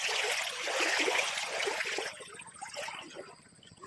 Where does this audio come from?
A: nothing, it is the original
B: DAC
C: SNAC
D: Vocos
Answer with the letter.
D